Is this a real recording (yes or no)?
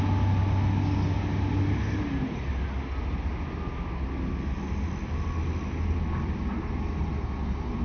yes